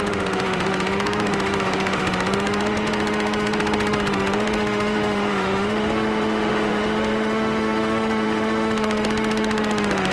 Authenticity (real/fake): fake